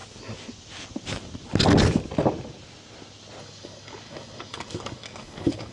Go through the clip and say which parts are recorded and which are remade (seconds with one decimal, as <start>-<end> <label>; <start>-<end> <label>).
0.0-3.4 recorded; 3.4-5.7 remade